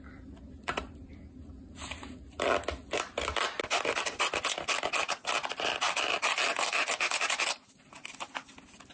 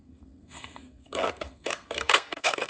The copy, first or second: second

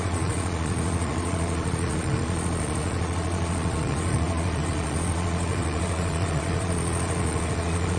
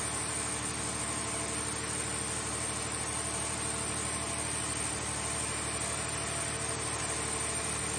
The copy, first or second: first